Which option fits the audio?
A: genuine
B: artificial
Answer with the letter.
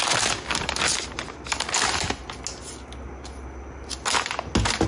A